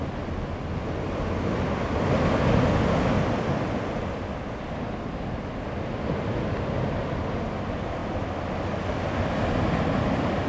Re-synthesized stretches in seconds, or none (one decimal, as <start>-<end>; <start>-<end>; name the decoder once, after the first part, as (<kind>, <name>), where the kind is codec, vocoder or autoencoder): none